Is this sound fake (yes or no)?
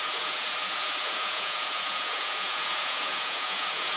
yes